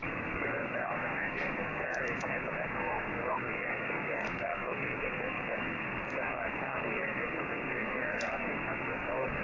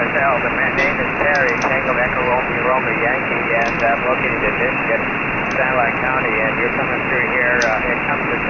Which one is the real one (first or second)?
second